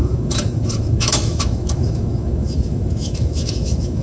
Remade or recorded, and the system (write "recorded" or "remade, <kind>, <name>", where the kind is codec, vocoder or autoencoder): remade, autoencoder, DAC-VAE